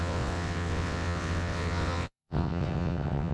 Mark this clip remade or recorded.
remade